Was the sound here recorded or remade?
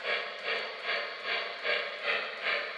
recorded